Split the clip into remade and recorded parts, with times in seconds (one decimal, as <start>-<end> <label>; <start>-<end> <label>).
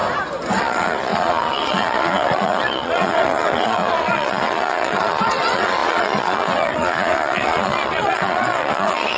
0.0-0.6 recorded; 0.6-9.2 remade